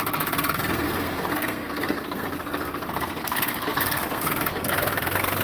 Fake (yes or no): yes